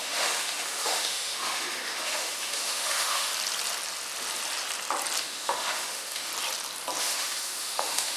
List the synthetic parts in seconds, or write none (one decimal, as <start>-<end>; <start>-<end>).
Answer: 0.0-3.3; 5.2-6.3; 7.0-8.2